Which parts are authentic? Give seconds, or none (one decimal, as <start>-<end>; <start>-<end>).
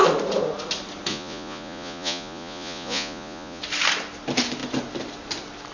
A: 0.0-1.1; 3.6-5.7